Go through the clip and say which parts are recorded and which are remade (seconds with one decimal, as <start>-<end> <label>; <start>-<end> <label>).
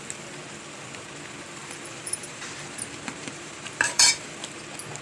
0.0-1.6 recorded; 1.6-4.6 remade; 4.6-5.0 recorded